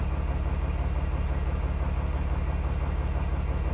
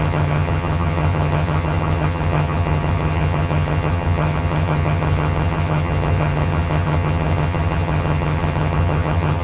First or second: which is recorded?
first